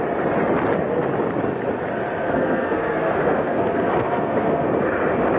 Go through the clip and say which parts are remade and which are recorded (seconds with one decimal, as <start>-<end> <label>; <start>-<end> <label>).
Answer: 0.0-2.3 recorded; 2.3-4.7 remade; 4.7-5.4 recorded